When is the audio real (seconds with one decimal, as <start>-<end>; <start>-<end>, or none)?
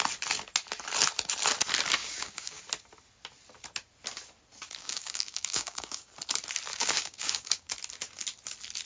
0.0-2.0; 2.6-4.8; 6.1-6.7; 7.7-8.9